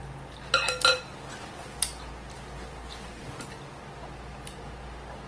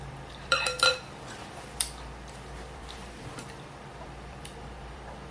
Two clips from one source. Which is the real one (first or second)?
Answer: first